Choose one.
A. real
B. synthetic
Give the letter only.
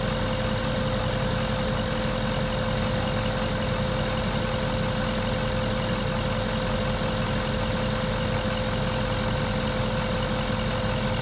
A